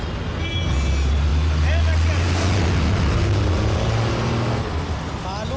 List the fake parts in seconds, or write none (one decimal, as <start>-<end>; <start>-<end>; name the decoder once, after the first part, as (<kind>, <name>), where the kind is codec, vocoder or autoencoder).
none